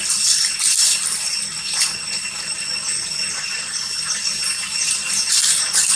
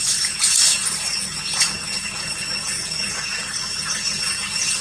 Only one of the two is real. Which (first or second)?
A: first